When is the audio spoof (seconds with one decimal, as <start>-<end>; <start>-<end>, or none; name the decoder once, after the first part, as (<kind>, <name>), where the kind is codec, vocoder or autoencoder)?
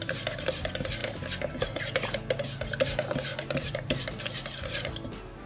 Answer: 3.3-4.0 (vocoder, BigVGAN v2)